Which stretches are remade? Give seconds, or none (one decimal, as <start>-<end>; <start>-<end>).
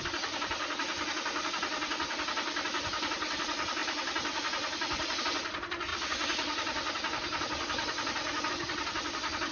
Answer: none